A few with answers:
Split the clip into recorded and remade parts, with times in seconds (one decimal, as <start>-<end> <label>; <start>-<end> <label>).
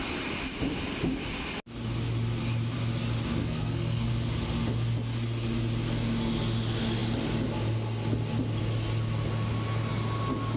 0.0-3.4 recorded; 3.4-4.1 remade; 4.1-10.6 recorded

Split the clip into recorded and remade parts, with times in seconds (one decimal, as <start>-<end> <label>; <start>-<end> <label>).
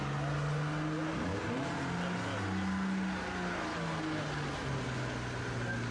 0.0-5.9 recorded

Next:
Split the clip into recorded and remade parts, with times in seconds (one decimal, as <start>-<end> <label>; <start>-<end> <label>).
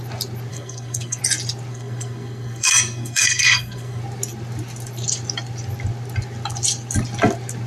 0.0-0.5 recorded; 0.5-1.2 remade; 1.2-1.7 recorded; 1.7-4.0 remade; 4.0-7.7 recorded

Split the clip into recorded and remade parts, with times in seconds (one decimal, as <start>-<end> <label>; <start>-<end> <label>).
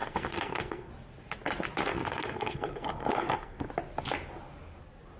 0.0-0.9 remade; 0.9-1.9 recorded; 1.9-3.7 remade; 3.7-5.2 recorded